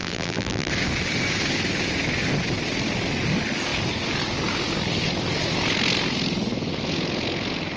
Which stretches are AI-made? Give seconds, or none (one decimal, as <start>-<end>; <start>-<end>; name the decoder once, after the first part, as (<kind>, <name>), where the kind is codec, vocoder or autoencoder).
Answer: 0.0-0.7 (vocoder, BigVGAN v2)